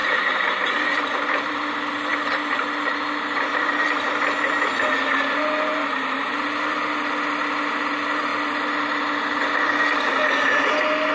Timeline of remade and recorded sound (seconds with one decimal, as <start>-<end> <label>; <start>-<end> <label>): 0.0-1.7 remade; 1.7-2.1 recorded; 2.1-4.4 remade; 4.4-5.7 recorded; 5.7-6.3 remade; 6.3-11.1 recorded